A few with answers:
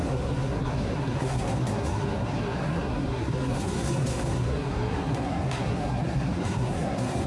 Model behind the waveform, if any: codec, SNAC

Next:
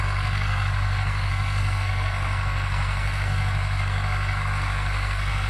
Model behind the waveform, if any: codec, SNAC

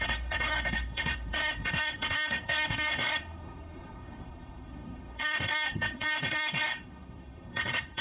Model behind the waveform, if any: codec, SNAC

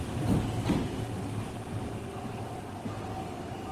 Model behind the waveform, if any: none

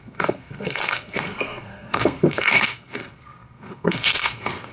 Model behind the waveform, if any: codec, SNAC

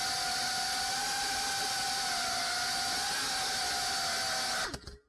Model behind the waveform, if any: none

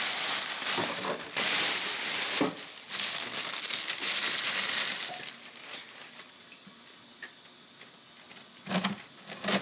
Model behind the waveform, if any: none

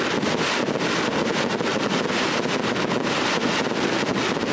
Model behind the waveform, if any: none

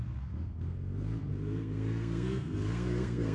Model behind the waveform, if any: codec, SNAC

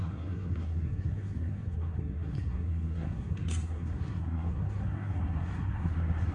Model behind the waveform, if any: codec, SNAC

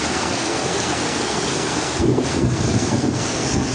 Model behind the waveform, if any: codec, SNAC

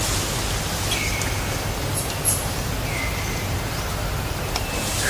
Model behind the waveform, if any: none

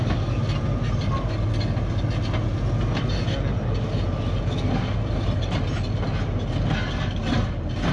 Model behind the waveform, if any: none